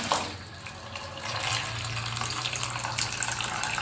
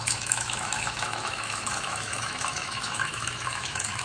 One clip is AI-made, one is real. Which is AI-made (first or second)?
second